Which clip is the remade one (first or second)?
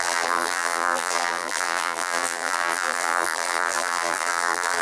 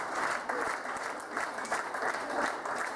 first